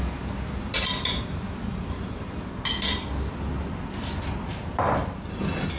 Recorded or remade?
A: recorded